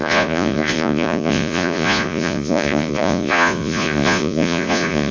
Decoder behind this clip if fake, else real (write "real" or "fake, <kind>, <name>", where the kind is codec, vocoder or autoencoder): fake, vocoder, Vocos